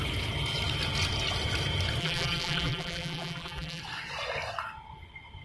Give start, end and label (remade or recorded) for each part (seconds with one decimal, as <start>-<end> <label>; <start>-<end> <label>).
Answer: 0.0-2.0 recorded; 2.0-3.8 remade; 3.8-5.4 recorded